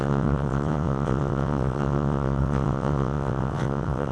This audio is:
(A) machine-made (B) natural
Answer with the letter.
A